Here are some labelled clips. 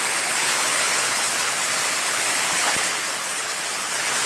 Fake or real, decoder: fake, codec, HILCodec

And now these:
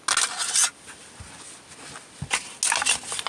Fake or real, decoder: real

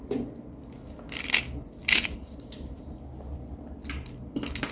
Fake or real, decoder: real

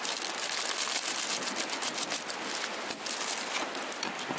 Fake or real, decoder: real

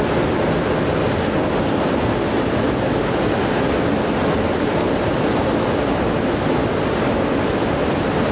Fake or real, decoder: real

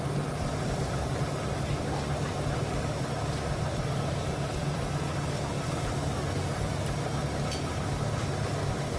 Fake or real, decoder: real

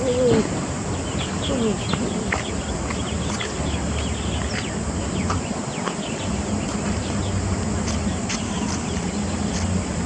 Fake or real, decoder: real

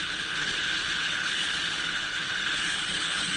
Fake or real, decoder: fake, codec, HILCodec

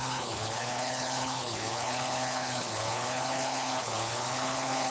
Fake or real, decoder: fake, codec, HILCodec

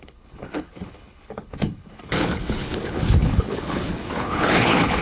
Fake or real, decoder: fake, codec, HILCodec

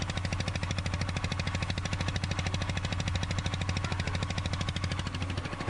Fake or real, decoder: real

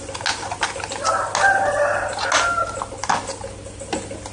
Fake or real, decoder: real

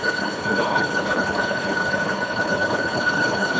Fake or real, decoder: fake, codec, HILCodec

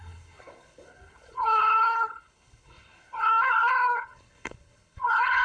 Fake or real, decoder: fake, codec, HILCodec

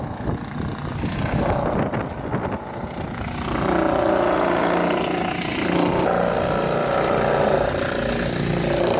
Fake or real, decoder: real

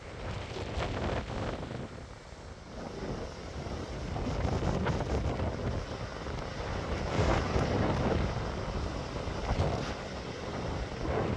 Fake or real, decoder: real